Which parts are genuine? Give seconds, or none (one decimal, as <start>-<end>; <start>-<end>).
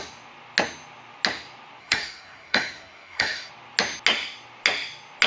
0.0-1.8; 3.5-5.3